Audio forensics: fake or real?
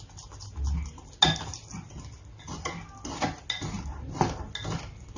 real